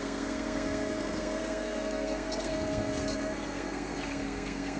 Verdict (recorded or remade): remade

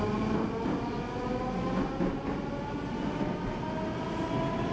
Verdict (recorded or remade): recorded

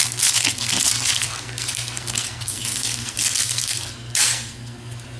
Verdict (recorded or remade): remade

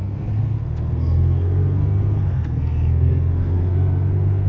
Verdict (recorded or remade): remade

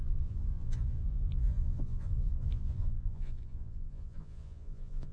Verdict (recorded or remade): remade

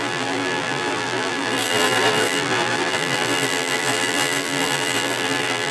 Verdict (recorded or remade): remade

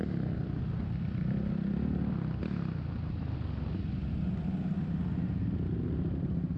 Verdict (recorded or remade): recorded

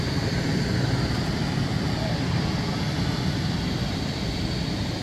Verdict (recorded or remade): recorded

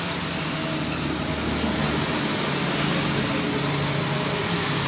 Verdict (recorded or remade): recorded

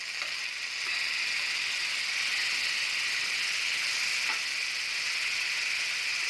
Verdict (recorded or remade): recorded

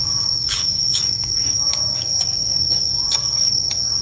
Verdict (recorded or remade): remade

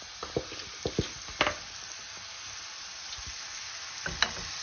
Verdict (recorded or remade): recorded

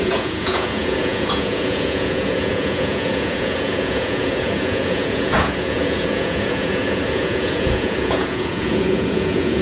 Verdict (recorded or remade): remade